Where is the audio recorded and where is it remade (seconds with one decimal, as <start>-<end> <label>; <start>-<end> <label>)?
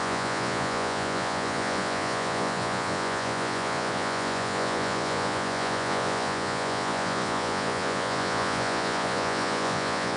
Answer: 0.0-10.2 remade